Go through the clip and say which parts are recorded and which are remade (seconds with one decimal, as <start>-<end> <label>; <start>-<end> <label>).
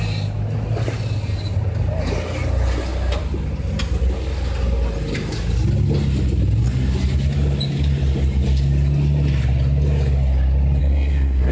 0.0-10.8 recorded; 10.8-11.5 remade